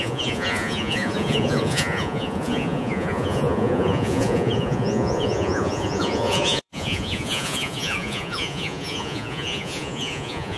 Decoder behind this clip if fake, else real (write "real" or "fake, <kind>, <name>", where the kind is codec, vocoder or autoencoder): fake, vocoder, Vocos